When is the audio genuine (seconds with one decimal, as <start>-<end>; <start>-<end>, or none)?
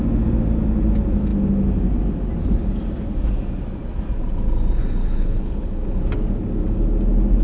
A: 0.0-5.0; 6.0-7.4